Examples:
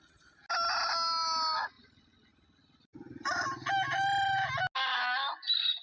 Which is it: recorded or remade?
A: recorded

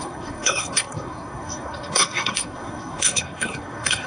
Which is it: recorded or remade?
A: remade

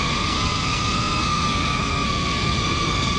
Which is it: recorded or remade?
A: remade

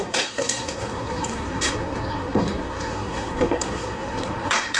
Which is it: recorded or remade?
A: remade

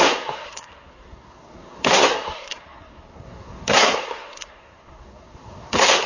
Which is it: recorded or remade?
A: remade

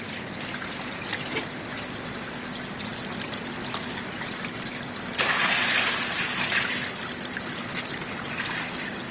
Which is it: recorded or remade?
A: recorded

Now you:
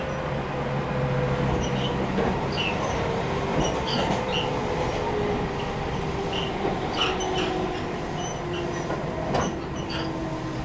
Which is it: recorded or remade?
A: recorded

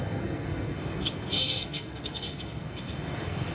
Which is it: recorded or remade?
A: remade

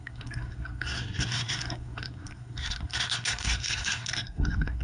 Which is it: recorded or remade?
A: remade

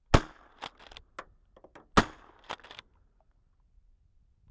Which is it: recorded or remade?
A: recorded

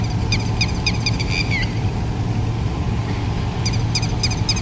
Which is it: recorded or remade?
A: recorded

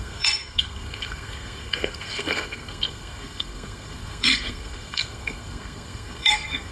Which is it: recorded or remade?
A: remade